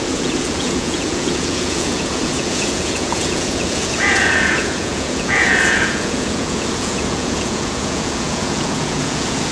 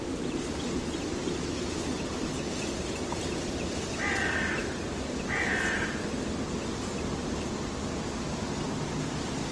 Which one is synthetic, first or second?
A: first